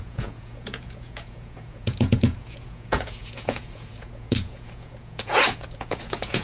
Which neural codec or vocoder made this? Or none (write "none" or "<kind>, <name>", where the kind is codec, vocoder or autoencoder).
vocoder, Vocos